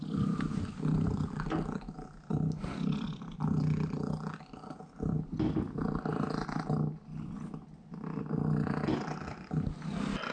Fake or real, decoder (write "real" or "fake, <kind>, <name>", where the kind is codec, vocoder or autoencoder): real